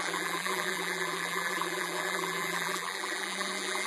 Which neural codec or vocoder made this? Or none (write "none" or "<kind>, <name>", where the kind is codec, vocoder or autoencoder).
vocoder, BigVGAN v2